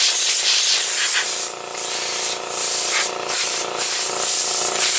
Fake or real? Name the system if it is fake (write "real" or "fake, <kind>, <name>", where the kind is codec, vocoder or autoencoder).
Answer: fake, vocoder, BigVGAN v2